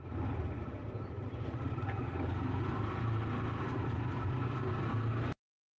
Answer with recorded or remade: remade